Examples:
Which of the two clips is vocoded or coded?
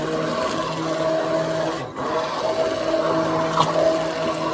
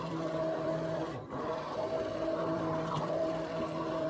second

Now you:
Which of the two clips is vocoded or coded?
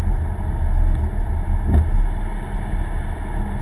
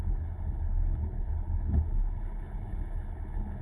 second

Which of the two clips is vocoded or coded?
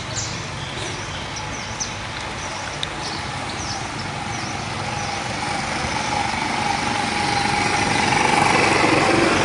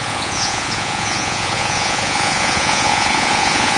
second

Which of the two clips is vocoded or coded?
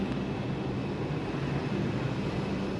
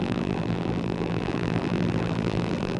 second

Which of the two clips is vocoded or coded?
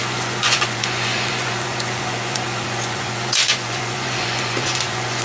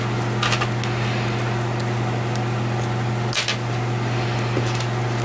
first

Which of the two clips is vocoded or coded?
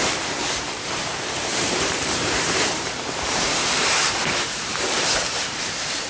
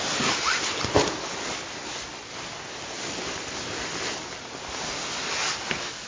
first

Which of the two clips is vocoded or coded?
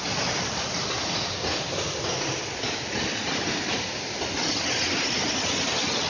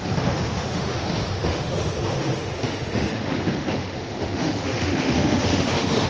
second